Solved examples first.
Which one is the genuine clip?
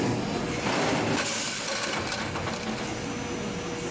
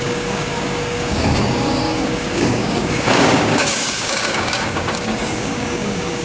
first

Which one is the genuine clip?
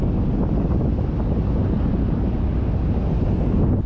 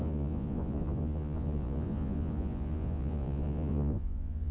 first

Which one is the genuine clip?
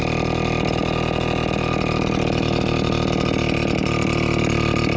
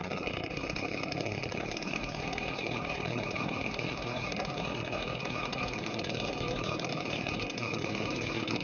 first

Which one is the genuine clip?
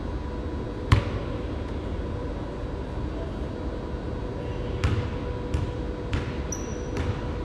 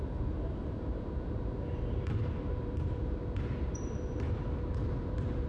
first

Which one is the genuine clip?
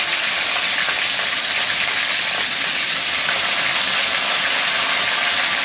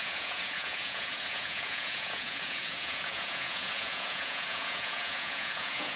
first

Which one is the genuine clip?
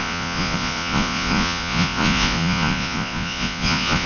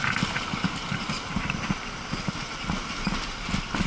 second